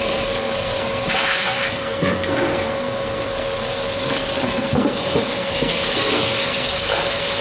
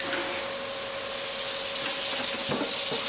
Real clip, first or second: second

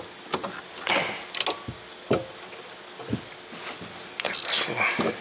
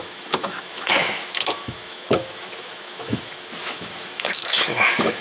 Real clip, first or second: first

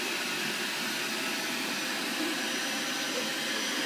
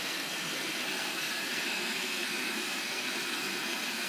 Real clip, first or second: first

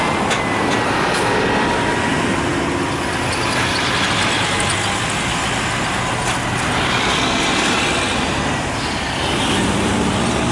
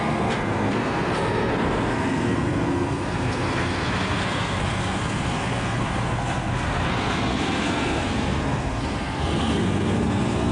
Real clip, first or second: first